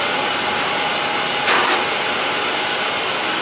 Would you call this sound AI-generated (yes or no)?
no